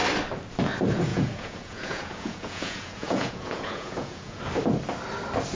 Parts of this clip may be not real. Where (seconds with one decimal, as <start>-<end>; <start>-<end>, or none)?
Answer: 1.1-4.4